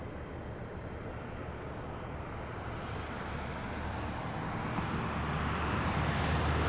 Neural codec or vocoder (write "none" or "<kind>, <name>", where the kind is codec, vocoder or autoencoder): none